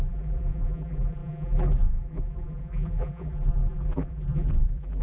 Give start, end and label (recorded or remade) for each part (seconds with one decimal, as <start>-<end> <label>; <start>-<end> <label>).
0.0-5.0 remade